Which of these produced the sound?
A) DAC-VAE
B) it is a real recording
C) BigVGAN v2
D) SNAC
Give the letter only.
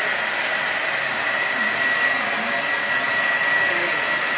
B